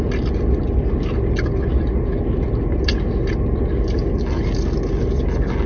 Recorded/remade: recorded